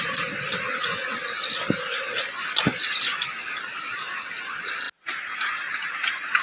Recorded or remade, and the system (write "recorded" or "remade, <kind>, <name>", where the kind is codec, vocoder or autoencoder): recorded